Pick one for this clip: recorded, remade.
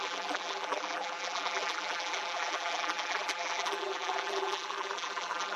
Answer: remade